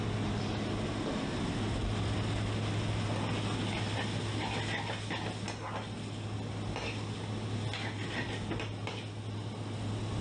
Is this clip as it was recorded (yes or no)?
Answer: yes